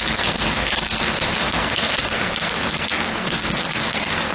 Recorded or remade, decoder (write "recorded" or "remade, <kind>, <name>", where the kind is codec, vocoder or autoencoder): remade, codec, SNAC